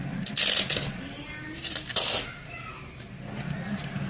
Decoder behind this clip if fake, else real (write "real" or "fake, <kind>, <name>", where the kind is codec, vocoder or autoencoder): real